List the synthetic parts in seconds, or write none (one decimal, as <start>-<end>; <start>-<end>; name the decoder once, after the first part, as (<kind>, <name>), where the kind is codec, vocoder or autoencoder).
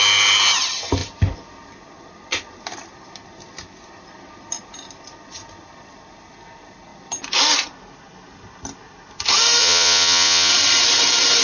9.6-10.5 (vocoder, Vocos)